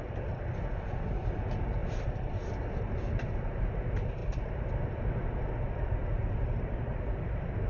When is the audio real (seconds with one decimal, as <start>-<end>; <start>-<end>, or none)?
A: 0.0-1.8; 2.5-6.0; 6.9-7.7